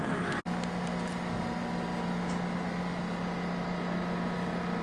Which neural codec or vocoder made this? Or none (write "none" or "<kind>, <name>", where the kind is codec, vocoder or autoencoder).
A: none